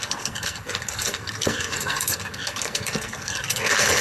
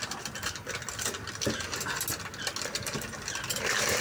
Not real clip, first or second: first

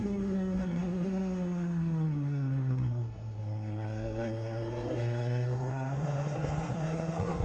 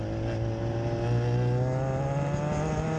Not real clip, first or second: first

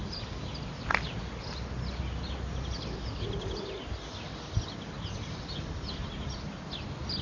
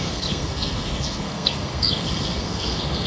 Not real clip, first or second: second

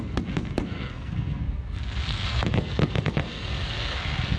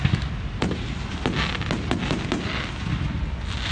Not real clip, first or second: first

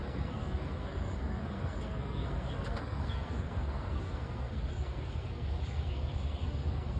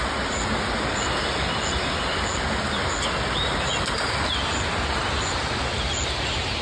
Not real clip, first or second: first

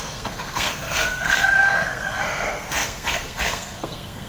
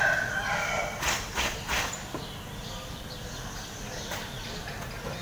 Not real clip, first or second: first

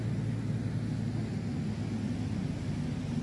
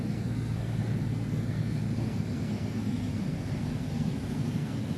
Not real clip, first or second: second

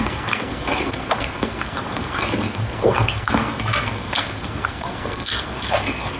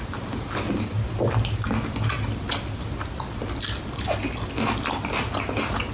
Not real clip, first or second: first